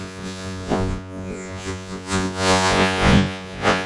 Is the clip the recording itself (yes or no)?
no